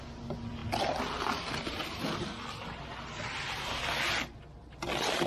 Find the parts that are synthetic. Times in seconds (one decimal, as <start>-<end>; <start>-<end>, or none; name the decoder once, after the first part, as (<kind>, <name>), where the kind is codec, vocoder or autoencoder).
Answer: none